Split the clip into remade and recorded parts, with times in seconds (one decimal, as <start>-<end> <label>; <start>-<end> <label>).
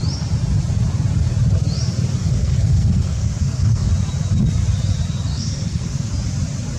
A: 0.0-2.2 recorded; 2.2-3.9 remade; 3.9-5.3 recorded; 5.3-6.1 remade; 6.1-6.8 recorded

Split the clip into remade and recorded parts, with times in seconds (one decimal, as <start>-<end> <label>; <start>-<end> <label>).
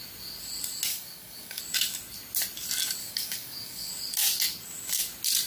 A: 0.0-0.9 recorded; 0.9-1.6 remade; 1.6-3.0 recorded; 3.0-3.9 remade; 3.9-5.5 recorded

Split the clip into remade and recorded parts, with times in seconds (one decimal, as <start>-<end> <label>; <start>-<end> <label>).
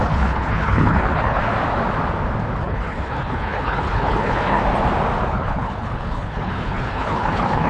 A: 0.0-1.4 remade; 1.4-2.6 recorded; 2.6-4.6 remade; 4.6-5.2 recorded; 5.2-7.7 remade